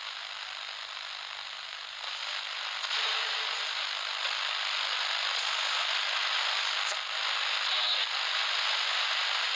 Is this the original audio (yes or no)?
yes